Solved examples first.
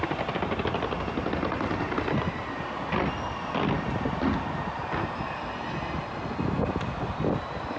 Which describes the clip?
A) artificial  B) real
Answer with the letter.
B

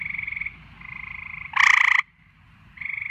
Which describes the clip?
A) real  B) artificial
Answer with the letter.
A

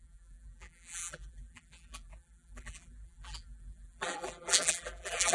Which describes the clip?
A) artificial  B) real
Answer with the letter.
A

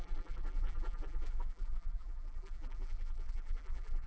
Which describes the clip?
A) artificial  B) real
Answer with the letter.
A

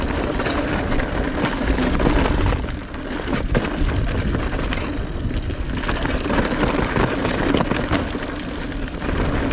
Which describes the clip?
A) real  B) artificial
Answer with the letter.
A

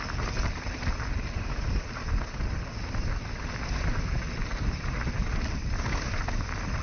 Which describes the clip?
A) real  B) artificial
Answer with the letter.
A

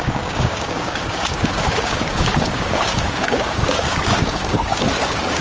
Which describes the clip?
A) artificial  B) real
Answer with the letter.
A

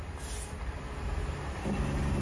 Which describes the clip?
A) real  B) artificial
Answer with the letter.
A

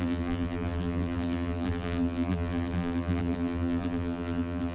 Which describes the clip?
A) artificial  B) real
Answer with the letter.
A